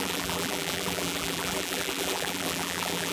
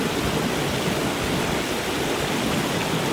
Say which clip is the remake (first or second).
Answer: first